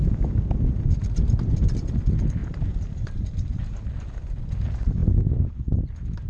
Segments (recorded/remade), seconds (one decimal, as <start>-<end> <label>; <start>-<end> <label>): 0.0-1.0 recorded; 1.0-1.6 remade; 1.6-2.4 recorded; 2.4-3.8 remade; 3.8-6.3 recorded